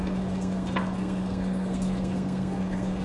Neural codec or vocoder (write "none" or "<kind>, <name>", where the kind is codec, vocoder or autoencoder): codec, SNAC